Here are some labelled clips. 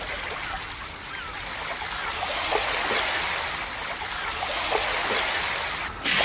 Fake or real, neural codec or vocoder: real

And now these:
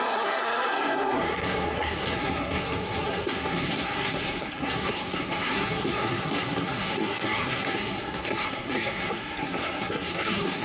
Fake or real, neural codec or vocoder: fake, codec, SNAC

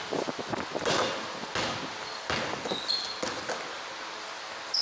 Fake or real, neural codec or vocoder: real